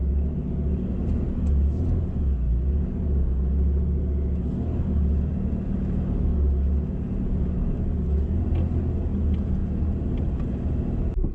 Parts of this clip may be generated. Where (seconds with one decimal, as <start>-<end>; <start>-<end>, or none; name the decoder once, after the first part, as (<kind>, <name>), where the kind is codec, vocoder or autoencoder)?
none